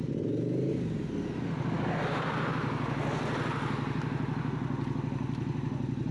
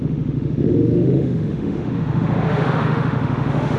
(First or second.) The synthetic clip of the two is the second